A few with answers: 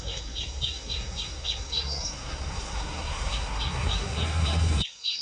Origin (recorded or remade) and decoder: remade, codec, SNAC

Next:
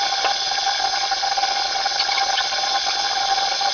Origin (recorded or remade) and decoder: recorded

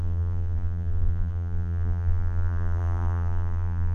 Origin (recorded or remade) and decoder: remade, vocoder, BigVGAN v2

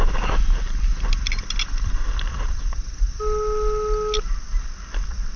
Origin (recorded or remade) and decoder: recorded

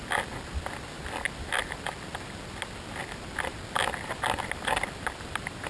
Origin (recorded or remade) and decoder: recorded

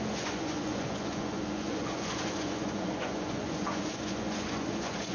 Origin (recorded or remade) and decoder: remade, vocoder, Vocos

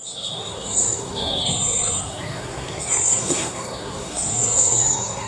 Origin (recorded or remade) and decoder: remade, codec, SNAC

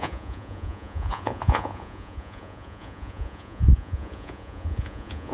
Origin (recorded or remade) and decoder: remade, vocoder, Vocos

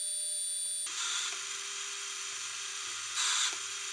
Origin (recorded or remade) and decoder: recorded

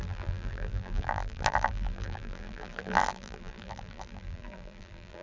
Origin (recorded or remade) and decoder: remade, vocoder, BigVGAN v2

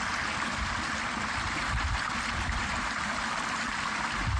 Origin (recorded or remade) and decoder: recorded